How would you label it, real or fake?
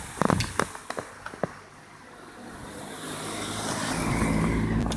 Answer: real